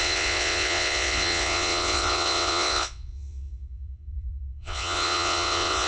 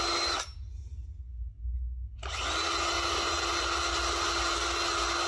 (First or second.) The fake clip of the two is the first